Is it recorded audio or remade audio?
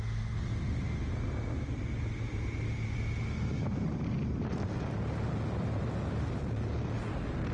recorded